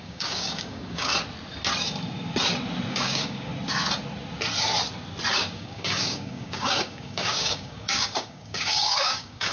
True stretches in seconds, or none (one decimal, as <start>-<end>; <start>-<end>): 1.1-2.9; 3.5-5.3